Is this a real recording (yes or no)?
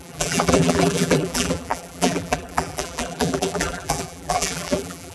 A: no